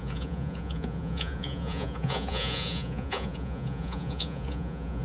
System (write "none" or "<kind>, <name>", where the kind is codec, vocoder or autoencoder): vocoder, Vocos